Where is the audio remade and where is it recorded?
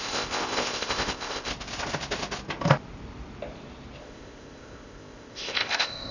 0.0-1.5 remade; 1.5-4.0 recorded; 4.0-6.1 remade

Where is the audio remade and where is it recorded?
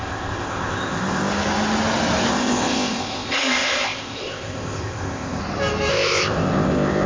0.0-1.3 remade; 1.3-2.3 recorded; 2.3-5.4 remade; 5.4-5.9 recorded; 5.9-7.1 remade